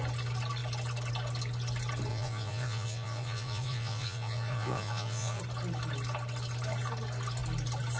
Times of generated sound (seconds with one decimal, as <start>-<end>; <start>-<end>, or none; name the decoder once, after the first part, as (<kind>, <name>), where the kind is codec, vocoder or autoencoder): 2.1-5.4 (vocoder, Vocos)